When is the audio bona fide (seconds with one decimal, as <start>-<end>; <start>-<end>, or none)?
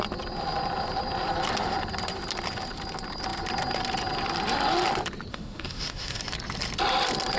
0.0-5.3; 6.2-7.4